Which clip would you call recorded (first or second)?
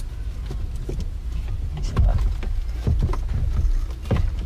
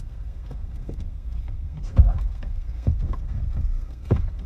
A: first